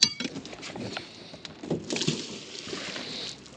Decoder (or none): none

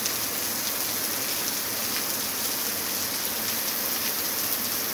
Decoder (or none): none